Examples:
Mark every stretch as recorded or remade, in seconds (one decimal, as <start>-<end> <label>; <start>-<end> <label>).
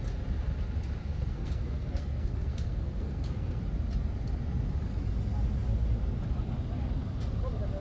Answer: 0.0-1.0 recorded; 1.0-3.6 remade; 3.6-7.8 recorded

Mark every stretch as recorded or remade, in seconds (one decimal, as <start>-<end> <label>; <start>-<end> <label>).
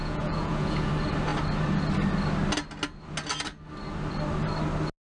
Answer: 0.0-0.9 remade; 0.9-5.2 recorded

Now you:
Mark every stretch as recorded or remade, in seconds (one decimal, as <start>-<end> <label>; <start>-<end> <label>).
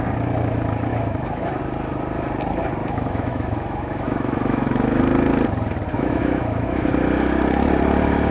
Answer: 0.0-0.9 recorded; 0.9-1.6 remade; 1.6-2.8 recorded; 2.8-5.0 remade; 5.0-5.9 recorded; 5.9-6.9 remade; 6.9-8.3 recorded